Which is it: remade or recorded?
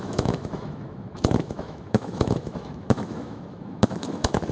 remade